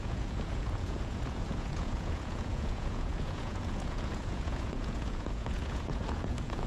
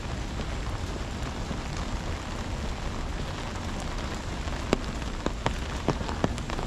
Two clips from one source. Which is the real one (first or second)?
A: second